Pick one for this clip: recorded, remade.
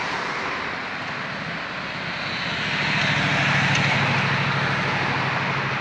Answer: recorded